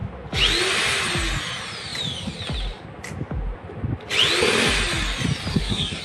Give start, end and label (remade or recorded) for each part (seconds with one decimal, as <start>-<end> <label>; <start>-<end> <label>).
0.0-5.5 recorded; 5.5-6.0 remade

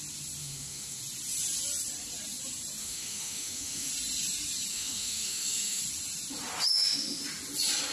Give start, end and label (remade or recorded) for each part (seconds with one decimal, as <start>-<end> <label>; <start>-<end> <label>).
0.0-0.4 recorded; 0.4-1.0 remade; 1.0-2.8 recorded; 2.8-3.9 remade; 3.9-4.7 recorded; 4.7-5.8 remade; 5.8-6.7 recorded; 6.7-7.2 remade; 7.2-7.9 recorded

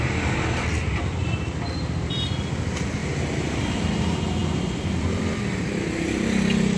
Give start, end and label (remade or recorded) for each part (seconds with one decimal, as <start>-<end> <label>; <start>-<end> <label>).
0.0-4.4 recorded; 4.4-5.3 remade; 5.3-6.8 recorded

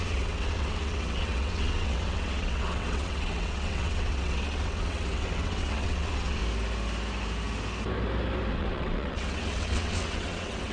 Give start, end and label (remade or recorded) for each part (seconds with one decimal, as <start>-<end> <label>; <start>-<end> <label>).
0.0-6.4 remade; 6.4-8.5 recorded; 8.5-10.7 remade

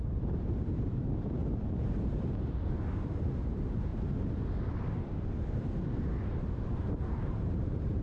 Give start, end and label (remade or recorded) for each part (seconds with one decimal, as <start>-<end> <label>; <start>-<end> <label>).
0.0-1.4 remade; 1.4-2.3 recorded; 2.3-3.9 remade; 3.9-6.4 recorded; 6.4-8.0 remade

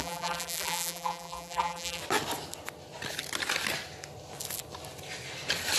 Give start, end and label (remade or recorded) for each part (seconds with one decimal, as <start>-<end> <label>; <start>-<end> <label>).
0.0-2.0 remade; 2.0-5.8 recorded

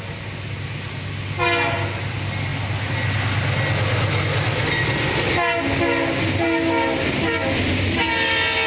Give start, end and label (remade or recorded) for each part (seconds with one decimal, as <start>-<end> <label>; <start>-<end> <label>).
0.0-8.7 recorded

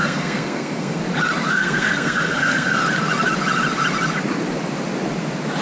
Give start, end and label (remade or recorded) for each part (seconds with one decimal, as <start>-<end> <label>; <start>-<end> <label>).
0.0-1.0 remade; 1.0-1.5 recorded; 1.5-2.8 remade; 2.8-5.6 recorded